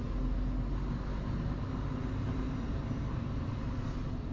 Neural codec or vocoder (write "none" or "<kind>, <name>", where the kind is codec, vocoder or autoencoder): none